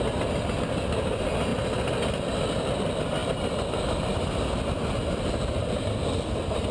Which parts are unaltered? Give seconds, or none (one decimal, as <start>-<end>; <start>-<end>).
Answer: 0.0-6.7